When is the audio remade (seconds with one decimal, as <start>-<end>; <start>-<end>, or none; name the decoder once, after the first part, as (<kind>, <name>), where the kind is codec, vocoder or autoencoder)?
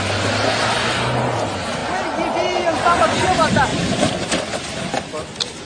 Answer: 3.7-5.0 (vocoder, BigVGAN v2)